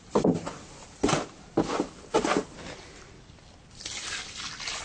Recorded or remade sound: recorded